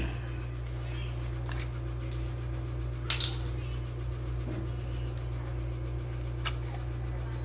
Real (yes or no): yes